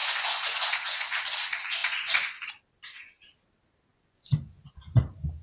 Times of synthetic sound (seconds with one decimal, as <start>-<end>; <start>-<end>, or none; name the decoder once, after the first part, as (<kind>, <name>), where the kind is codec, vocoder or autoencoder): 0.0-1.2 (vocoder, Vocos); 1.8-2.3; 3.9-4.9